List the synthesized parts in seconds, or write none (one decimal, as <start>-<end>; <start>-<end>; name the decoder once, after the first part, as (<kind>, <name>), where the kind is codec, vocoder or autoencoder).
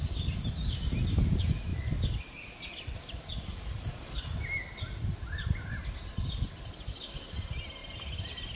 1.7-3.5 (vocoder, BigVGAN v2)